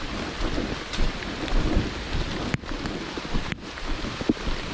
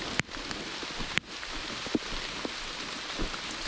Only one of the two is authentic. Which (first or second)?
second